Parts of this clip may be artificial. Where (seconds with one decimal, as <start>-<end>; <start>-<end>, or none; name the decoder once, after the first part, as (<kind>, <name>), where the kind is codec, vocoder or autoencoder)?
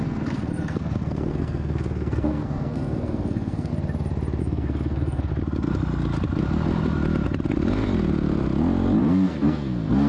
0.0-3.7 (codec, SNAC); 4.4-5.3; 9.0-10.1